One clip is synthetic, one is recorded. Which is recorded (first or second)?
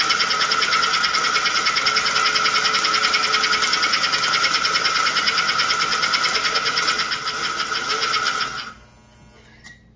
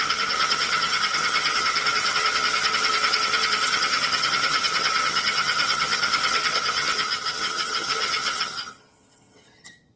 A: first